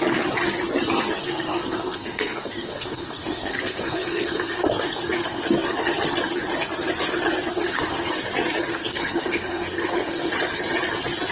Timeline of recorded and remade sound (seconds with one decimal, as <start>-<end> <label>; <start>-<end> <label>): 0.0-1.2 recorded; 1.2-5.4 remade; 5.4-7.5 recorded; 7.5-8.1 remade; 8.1-8.7 recorded; 8.7-10.3 remade; 10.3-11.3 recorded